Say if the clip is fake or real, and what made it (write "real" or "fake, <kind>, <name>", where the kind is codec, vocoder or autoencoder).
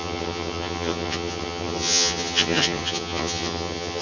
fake, vocoder, HiFi-GAN